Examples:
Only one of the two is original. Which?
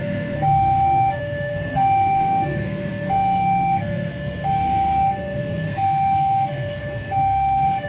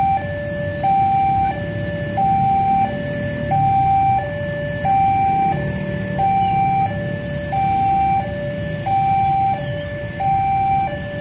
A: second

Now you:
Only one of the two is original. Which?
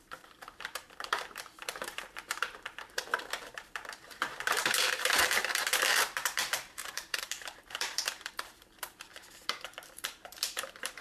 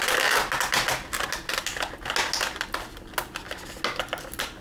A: second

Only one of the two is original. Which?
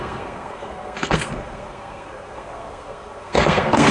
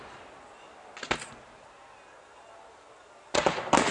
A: second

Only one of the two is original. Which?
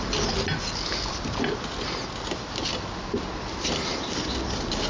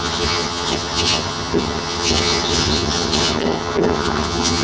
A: first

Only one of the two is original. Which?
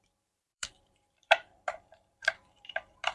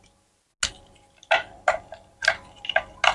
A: second